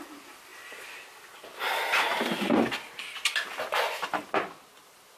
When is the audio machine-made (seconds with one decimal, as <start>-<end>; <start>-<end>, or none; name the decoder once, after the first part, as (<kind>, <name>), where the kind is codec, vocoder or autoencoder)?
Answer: none